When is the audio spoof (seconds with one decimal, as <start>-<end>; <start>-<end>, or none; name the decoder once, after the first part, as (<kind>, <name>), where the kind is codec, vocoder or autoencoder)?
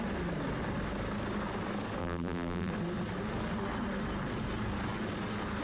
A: 2.0-2.7 (vocoder, BigVGAN v2)